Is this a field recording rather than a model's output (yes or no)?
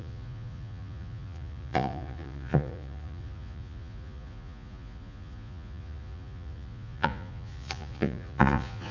no